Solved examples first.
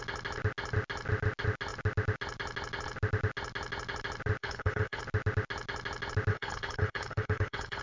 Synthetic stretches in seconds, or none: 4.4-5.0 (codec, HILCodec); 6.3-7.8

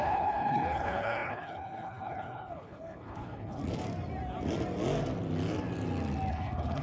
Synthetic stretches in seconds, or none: 0.0-3.6 (codec, HILCodec); 6.3-6.8

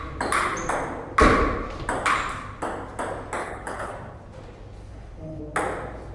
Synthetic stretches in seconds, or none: 3.4-3.9 (codec, HILCodec); 4.8-5.4